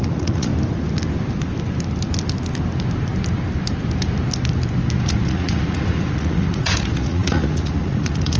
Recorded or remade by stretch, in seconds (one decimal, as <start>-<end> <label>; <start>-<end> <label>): 0.0-0.5 remade; 0.5-5.0 recorded; 5.0-8.4 remade